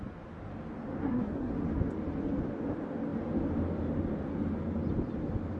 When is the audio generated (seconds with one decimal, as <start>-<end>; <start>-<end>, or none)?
1.0-1.5